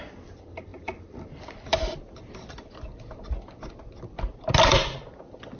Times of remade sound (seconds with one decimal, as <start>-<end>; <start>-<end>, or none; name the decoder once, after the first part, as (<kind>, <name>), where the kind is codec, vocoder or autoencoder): none